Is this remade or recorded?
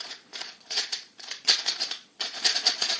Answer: remade